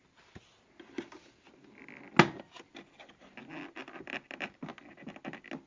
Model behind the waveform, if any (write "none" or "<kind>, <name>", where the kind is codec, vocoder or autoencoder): none